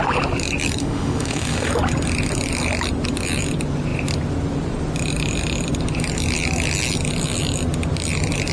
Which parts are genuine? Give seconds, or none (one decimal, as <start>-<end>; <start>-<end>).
0.0-0.8; 1.7-8.5